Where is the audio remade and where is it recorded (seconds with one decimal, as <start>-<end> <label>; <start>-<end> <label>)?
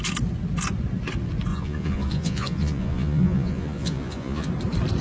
0.0-1.5 recorded; 1.5-4.5 remade; 4.5-5.0 recorded